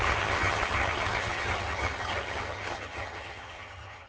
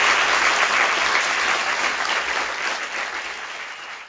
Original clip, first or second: second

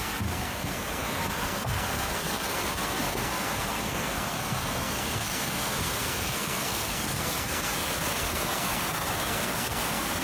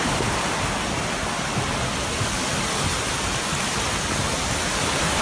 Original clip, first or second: second